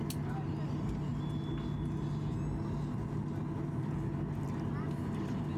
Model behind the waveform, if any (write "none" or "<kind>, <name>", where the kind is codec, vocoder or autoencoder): none